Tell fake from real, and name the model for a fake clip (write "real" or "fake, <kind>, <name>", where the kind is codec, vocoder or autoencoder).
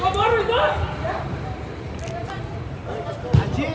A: real